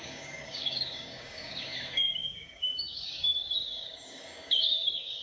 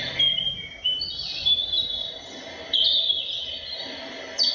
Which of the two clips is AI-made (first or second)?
first